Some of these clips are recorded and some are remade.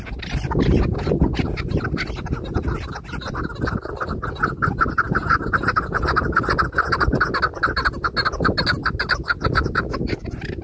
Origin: recorded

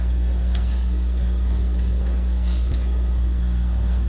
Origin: remade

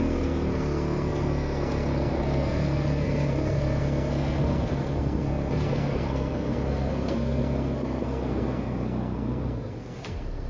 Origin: remade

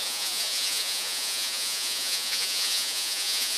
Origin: remade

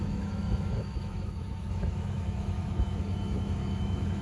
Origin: remade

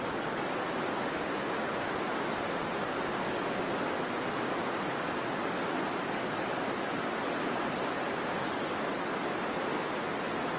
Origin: recorded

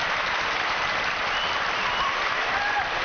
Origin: recorded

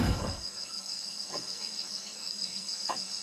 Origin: remade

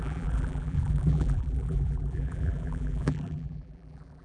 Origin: remade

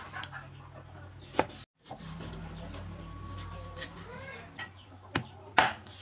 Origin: recorded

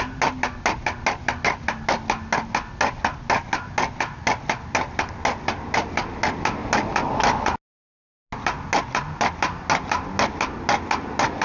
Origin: recorded